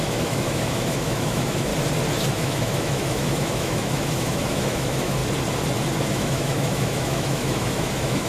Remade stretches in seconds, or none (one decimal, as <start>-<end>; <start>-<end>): 0.0-1.7; 2.3-5.2; 6.1-8.3